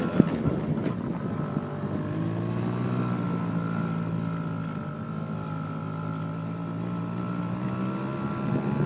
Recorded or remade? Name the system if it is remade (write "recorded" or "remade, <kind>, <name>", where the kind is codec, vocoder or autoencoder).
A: recorded